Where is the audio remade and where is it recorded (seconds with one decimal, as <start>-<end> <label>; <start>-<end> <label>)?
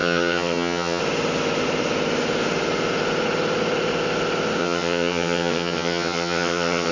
0.0-1.0 remade; 1.0-4.6 recorded; 4.6-6.9 remade